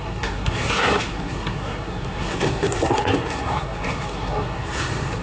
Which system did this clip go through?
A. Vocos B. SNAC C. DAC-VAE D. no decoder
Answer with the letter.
B